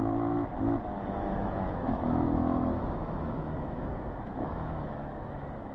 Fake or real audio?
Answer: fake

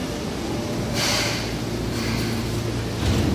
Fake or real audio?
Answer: real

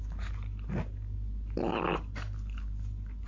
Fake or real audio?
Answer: real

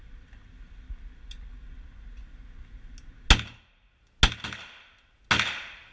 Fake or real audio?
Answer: real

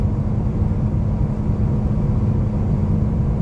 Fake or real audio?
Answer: real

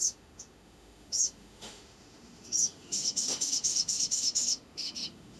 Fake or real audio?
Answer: fake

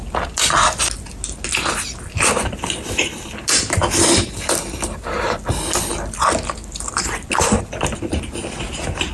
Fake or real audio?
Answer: real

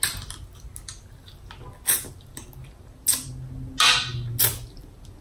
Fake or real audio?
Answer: real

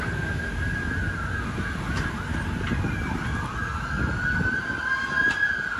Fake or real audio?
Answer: real